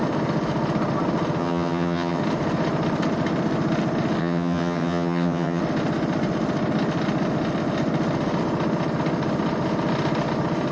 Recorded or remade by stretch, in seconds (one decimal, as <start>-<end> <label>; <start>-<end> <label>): 0.0-1.4 recorded; 1.4-2.2 remade; 2.2-4.2 recorded; 4.2-5.6 remade; 5.6-10.7 recorded